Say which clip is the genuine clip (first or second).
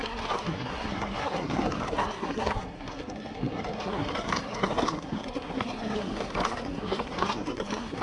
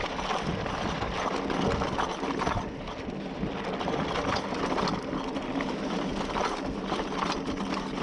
second